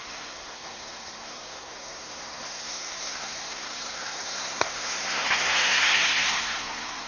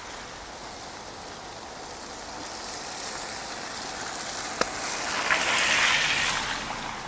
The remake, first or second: first